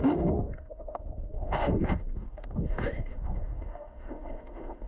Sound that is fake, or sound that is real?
fake